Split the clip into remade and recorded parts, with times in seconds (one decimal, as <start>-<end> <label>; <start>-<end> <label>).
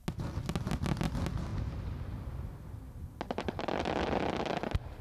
0.0-5.0 recorded